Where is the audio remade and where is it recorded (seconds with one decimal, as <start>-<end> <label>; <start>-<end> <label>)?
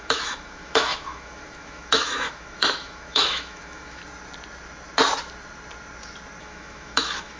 0.0-4.0 remade; 4.0-6.4 recorded; 6.4-7.4 remade